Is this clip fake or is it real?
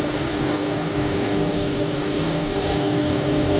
fake